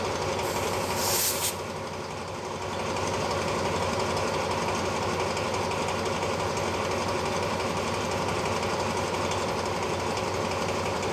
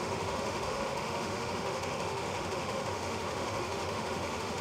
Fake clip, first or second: second